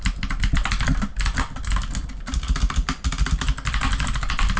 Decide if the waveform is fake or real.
real